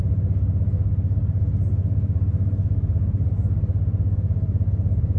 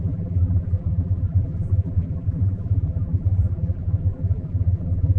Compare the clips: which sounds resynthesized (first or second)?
second